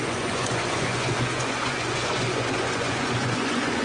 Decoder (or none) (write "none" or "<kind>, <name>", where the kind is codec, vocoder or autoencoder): vocoder, Vocos